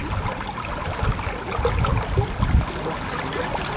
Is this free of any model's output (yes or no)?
yes